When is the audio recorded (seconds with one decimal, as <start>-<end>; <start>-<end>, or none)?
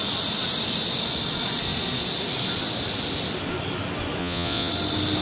0.0-4.2; 4.7-5.2